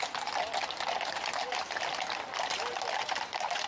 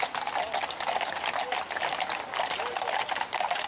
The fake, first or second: first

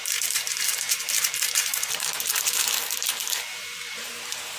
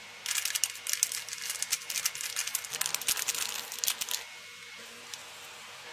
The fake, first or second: first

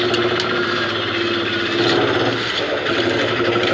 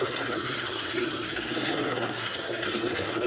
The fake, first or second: second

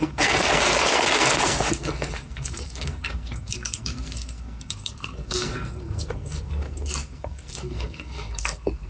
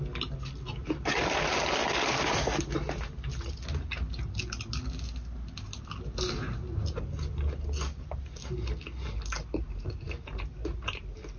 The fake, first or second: first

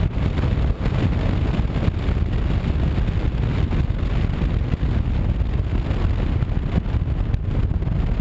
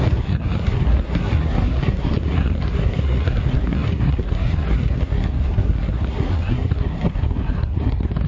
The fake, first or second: second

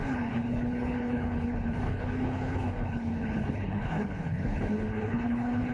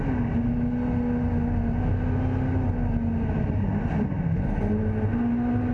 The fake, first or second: first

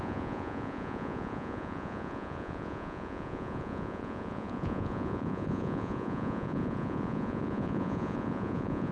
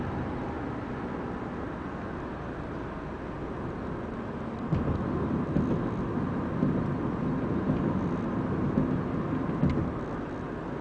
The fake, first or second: first